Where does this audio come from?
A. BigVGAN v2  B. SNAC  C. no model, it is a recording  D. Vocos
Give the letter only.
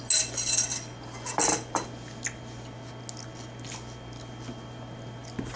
C